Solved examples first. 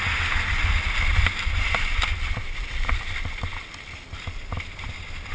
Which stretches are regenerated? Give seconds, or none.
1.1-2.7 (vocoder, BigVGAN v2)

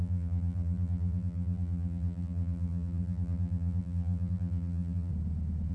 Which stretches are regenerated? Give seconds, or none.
0.0-5.1 (vocoder, BigVGAN v2)

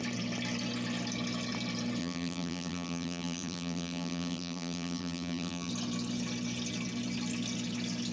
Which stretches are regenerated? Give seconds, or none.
2.0-5.7 (vocoder, BigVGAN v2)

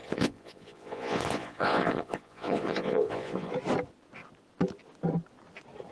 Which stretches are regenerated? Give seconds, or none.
0.0-3.5 (vocoder, Vocos)

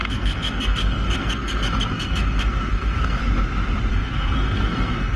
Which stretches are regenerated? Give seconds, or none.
0.0-3.2 (codec, SNAC); 3.9-5.2

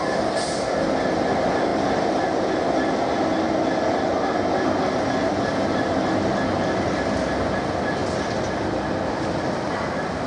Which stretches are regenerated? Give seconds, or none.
none